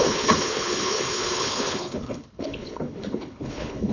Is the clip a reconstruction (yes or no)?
yes